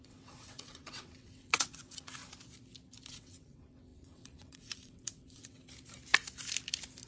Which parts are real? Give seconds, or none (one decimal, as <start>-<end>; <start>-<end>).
2.2-3.1; 5.6-7.1